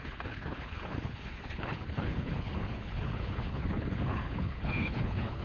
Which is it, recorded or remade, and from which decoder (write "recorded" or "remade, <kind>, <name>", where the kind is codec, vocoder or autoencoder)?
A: remade, codec, HILCodec